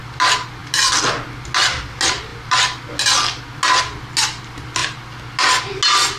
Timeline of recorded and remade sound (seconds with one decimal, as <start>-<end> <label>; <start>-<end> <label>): 0.0-6.2 recorded